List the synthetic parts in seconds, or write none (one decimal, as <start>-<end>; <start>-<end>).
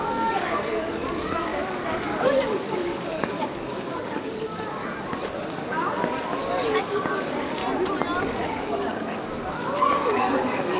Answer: 0.0-4.8; 5.5-7.6; 8.2-10.8